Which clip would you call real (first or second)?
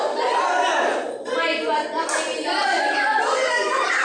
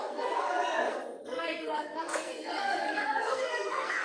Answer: first